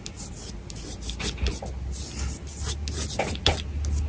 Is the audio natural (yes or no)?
yes